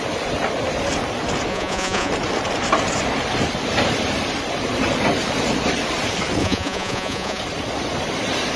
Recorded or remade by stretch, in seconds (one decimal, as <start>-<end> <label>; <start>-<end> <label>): 0.0-1.5 recorded; 1.5-2.1 remade; 2.1-6.4 recorded; 6.4-7.4 remade; 7.4-8.6 recorded